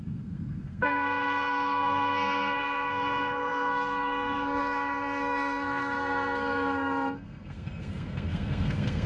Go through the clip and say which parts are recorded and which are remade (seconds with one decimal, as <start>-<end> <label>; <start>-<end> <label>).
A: 0.0-9.1 remade